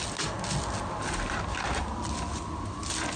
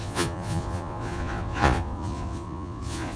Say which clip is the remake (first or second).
second